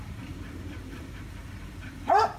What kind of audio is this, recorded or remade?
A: remade